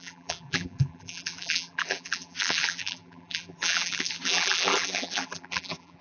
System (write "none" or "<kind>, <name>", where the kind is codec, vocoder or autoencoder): vocoder, BigVGAN v2